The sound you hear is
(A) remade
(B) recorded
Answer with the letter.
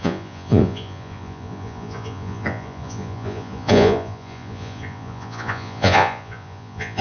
A